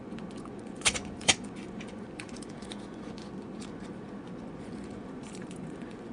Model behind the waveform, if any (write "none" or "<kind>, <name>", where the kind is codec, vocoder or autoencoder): vocoder, Vocos